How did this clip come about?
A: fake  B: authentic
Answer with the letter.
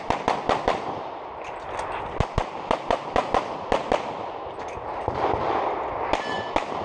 B